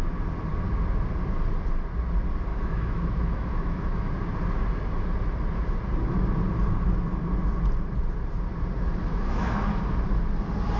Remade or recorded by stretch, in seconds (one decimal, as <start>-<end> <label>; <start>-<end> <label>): 0.0-2.5 recorded; 2.5-4.1 remade; 4.1-9.0 recorded; 9.0-9.5 remade; 9.5-10.8 recorded